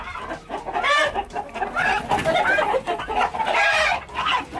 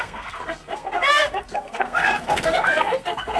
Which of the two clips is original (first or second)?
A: first